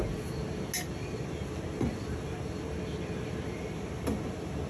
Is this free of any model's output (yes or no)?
yes